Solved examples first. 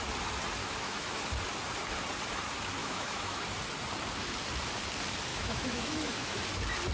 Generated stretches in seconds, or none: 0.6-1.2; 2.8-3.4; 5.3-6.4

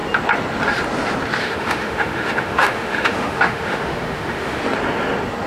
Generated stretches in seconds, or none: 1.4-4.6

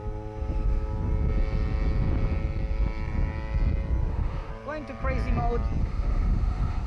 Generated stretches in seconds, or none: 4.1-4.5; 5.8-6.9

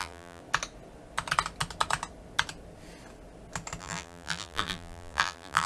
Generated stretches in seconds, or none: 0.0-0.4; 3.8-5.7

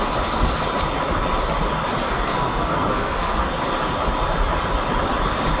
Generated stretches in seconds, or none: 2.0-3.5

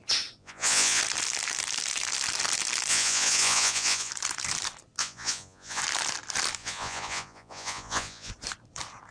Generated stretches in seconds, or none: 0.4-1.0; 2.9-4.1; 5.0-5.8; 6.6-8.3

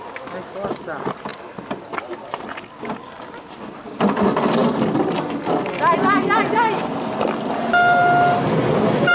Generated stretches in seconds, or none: none

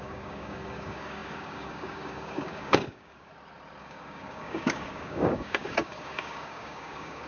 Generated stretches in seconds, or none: 0.0-3.3; 3.8-7.3